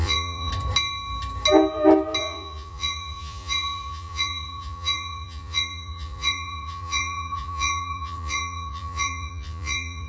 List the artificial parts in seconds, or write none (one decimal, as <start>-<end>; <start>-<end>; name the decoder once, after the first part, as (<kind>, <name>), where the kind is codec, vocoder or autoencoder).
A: 0.0-0.5 (vocoder, Vocos); 2.2-10.1